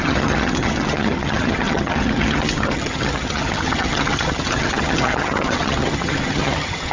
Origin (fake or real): fake